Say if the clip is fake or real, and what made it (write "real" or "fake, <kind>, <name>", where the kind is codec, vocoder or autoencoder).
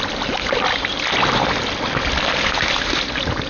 real